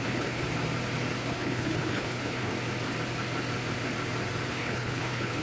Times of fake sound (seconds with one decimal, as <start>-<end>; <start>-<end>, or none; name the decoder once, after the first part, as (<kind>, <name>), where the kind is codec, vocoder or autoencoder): 0.0-0.4 (codec, HILCodec); 1.2-2.5; 4.5-5.4